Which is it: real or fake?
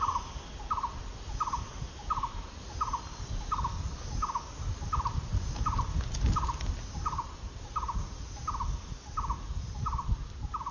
real